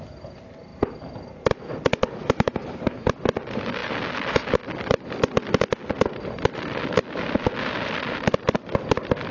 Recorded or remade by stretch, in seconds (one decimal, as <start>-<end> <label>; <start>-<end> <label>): 0.0-2.2 recorded; 2.2-3.0 remade; 3.0-9.3 recorded